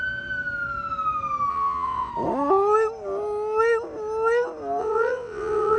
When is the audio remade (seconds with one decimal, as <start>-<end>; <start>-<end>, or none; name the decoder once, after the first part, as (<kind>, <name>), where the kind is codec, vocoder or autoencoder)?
1.5-2.1 (vocoder, WaveNeXt); 4.8-5.8